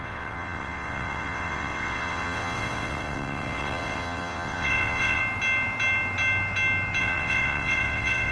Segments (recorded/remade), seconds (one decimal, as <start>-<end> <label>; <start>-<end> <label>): 0.0-5.2 remade; 5.2-7.0 recorded; 7.0-8.3 remade